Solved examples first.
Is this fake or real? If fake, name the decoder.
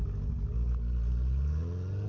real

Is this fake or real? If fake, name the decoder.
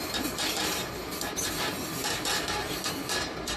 real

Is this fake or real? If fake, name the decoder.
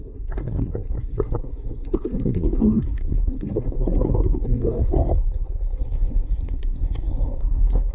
fake, codec, SNAC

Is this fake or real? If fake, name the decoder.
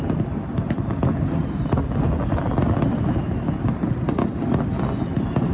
real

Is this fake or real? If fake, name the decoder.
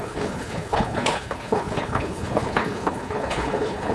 fake, codec, HILCodec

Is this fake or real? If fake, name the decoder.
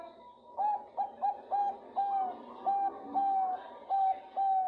real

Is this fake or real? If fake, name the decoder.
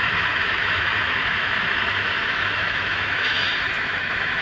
fake, autoencoder, DAC-VAE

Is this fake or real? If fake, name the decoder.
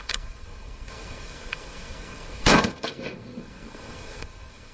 fake, codec, SNAC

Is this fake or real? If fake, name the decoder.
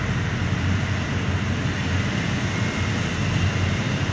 real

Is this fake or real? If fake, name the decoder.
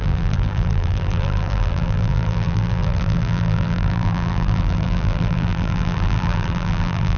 fake, vocoder, BigVGAN v2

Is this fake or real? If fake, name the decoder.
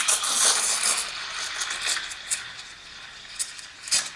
fake, vocoder, BigVGAN v2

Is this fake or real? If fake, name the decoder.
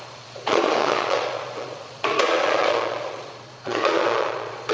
fake, vocoder, Vocos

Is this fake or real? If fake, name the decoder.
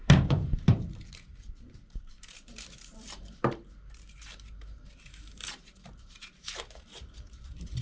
fake, vocoder, BigVGAN v2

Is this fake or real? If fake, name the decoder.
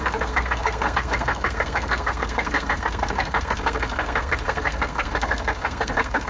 fake, codec, SNAC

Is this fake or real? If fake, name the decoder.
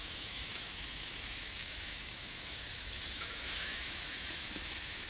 fake, autoencoder, DAC-VAE